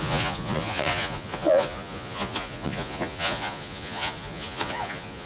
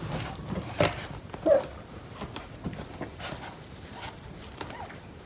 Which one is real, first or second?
second